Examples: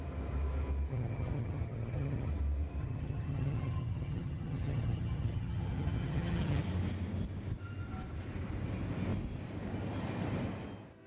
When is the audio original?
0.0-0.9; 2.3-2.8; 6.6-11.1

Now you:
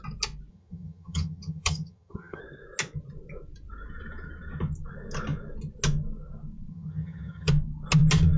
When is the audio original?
0.0-0.5; 2.4-6.7; 7.5-8.4